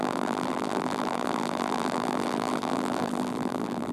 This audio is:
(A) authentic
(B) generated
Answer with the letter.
B